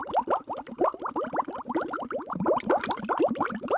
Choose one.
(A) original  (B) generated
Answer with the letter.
A